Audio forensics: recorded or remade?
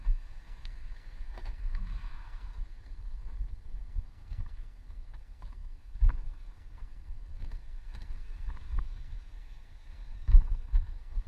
remade